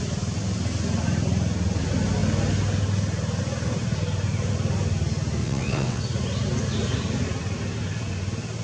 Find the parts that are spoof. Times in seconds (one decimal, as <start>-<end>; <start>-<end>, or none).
5.4-6.0